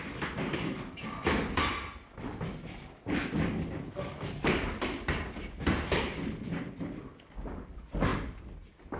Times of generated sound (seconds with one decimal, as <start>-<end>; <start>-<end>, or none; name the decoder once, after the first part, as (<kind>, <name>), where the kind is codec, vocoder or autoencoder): none